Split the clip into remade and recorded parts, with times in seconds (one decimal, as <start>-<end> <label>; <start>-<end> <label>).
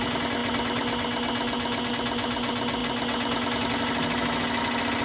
0.0-5.0 recorded